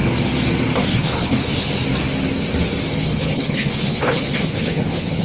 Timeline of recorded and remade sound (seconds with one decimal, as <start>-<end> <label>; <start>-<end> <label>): 0.0-0.9 recorded; 0.9-1.7 remade; 1.7-3.0 recorded; 3.0-5.2 remade